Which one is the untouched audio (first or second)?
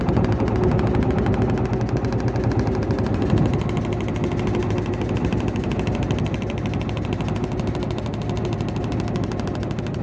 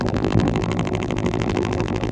first